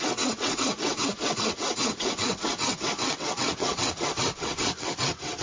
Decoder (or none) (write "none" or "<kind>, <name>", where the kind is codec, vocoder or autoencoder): vocoder, WaveNeXt